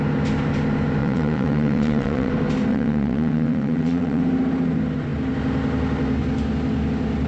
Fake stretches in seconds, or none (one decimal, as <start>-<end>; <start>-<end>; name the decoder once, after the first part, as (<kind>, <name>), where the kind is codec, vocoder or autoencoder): 1.0-2.3 (vocoder, WaveNeXt); 2.7-4.2